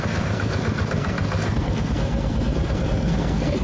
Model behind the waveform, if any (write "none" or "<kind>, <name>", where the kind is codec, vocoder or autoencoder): codec, SNAC